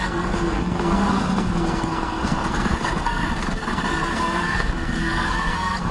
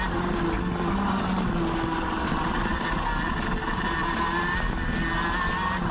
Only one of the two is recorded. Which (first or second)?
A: second